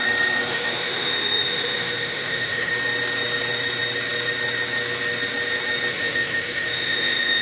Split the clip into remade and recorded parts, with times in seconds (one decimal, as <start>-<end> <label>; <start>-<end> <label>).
0.0-0.5 recorded; 0.5-2.7 remade; 2.7-5.9 recorded; 5.9-7.4 remade